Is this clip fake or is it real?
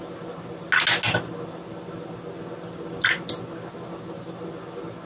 real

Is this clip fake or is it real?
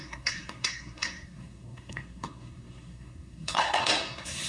fake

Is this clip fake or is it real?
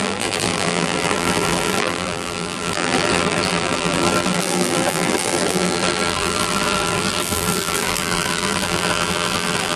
fake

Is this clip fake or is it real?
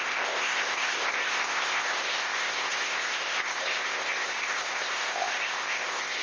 fake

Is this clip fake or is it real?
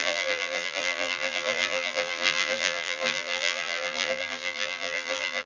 fake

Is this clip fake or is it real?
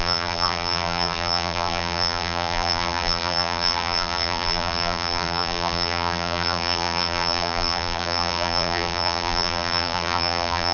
fake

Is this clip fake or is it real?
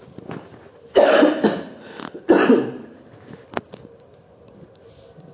fake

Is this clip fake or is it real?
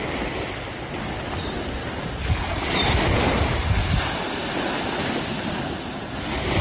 real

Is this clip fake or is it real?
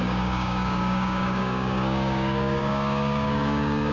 fake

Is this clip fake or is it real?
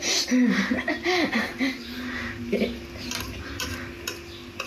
real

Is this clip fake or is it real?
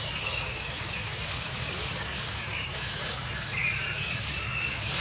fake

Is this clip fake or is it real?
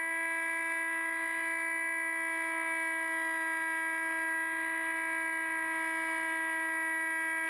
real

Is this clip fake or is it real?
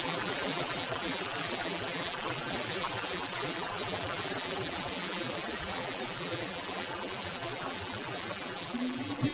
fake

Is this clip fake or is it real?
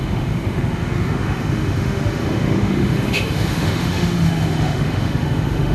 fake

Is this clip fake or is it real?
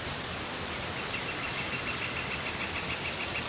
real